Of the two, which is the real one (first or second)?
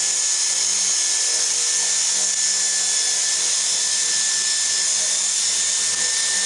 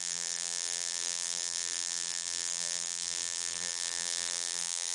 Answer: first